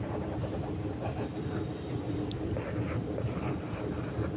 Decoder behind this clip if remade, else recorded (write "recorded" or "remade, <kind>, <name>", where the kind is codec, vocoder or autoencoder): recorded